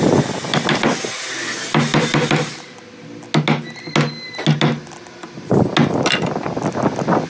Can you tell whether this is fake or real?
real